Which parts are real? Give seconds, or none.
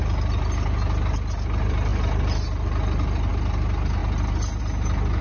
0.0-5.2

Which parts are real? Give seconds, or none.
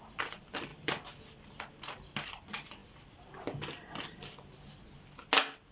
0.0-0.7; 1.6-5.7